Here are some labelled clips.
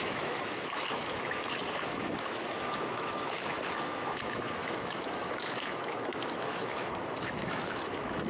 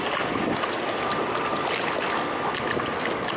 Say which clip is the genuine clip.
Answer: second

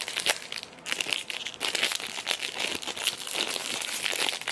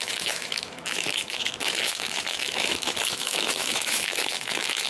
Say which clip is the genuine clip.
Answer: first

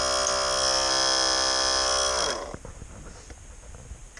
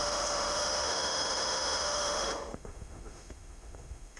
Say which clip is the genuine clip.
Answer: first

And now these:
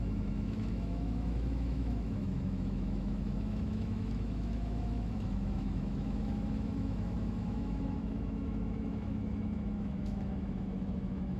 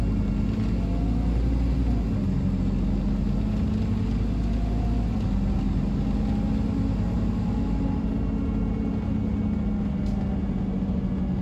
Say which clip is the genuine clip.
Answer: second